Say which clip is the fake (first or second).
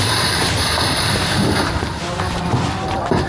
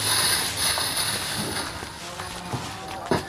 first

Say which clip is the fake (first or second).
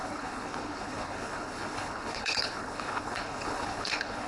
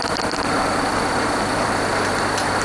first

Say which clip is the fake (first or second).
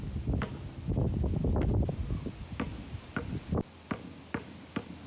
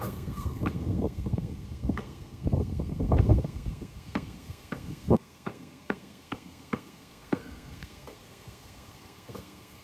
second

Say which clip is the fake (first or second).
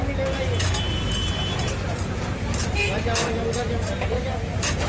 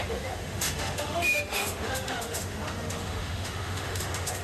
second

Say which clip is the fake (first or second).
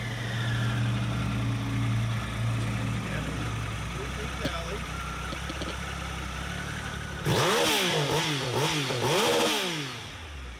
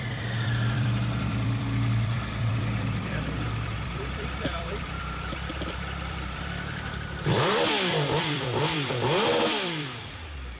second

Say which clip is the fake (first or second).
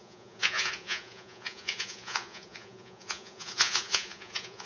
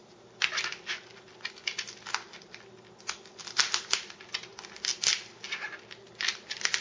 first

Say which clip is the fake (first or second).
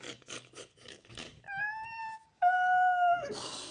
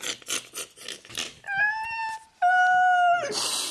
first